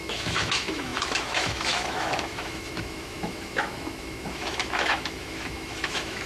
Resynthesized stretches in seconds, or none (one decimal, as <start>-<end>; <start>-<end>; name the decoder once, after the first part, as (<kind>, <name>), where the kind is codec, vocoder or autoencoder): 0.0-6.3 (autoencoder, DAC-VAE)